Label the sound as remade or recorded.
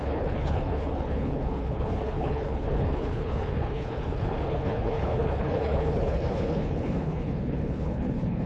remade